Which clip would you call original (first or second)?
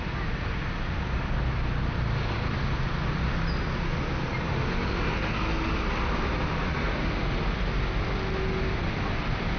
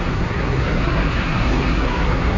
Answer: first